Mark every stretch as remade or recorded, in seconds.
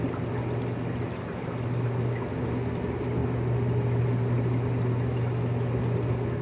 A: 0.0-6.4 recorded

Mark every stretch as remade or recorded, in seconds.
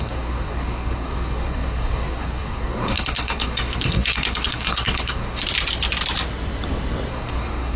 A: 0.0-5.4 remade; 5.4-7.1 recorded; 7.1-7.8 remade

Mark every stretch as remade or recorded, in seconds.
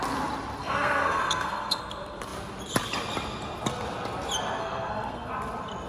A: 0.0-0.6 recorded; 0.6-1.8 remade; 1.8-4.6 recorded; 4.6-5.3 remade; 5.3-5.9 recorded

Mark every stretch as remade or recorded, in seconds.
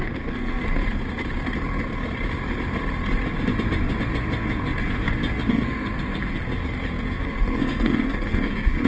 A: 0.0-0.8 remade; 0.8-5.5 recorded; 5.5-6.4 remade; 6.4-7.1 recorded; 7.1-8.9 remade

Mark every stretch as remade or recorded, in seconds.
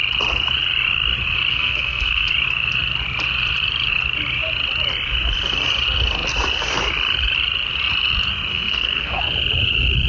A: 0.0-1.5 recorded; 1.5-2.3 remade; 2.3-8.5 recorded; 8.5-9.2 remade; 9.2-10.1 recorded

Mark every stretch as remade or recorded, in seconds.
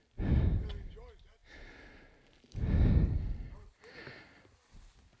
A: 0.0-5.2 recorded